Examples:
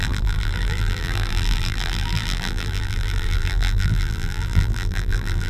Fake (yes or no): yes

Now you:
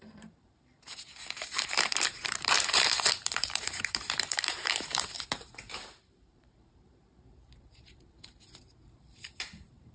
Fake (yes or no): yes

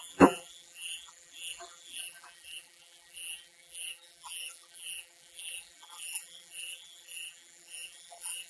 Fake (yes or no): yes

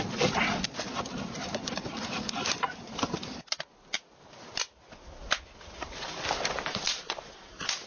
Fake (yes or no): no